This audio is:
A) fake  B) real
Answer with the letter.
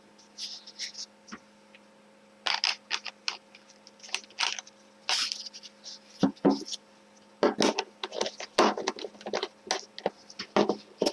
B